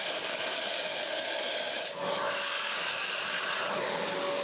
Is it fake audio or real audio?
fake